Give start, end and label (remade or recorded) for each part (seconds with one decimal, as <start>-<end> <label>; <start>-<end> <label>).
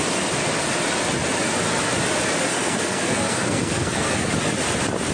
0.0-2.5 recorded; 2.5-4.3 remade; 4.3-5.1 recorded